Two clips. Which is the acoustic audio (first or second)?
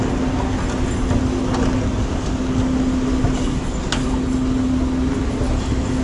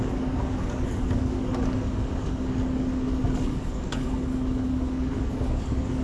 first